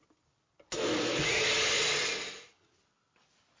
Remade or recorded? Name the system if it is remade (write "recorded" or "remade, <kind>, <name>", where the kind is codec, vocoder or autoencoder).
recorded